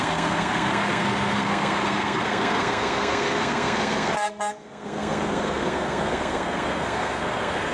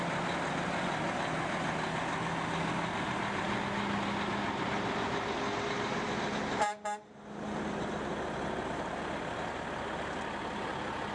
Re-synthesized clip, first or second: first